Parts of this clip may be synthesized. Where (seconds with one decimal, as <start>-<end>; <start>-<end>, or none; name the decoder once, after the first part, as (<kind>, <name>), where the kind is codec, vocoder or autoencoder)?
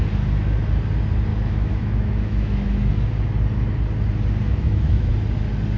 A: 1.3-2.9 (autoencoder, DAC-VAE); 4.5-5.1